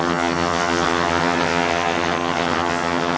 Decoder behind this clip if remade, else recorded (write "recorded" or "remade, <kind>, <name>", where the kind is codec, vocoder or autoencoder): remade, vocoder, HiFi-GAN